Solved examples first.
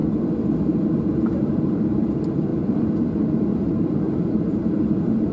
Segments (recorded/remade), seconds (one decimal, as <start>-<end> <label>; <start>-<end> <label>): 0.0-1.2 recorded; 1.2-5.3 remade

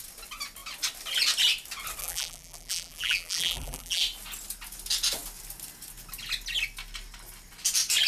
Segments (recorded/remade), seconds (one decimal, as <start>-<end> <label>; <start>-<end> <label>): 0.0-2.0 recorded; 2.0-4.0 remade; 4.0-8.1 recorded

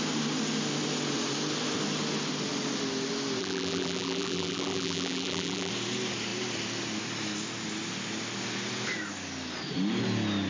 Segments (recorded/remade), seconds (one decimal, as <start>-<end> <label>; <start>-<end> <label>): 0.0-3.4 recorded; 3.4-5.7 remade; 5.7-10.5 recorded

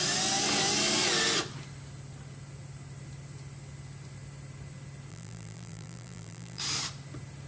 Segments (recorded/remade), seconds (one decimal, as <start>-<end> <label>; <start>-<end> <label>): 0.0-5.1 recorded; 5.1-6.6 remade; 6.6-7.5 recorded

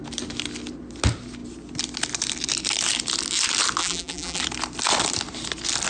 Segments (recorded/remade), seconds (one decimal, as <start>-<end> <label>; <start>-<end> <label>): 0.0-3.8 recorded; 3.8-4.4 remade; 4.4-5.9 recorded

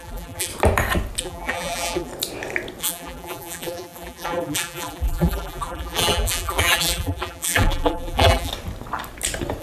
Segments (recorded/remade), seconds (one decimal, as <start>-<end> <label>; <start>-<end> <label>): 0.0-0.5 remade; 0.5-1.2 recorded; 1.2-2.1 remade; 2.1-2.8 recorded; 2.8-8.5 remade; 8.5-9.6 recorded

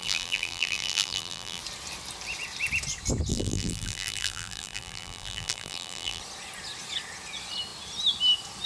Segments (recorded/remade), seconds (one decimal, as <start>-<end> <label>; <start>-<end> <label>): 0.0-1.6 remade; 1.6-3.3 recorded; 3.3-6.2 remade; 6.2-8.7 recorded

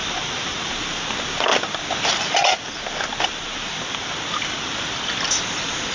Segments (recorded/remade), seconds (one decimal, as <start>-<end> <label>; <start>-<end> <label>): 0.0-0.7 remade; 0.7-5.9 recorded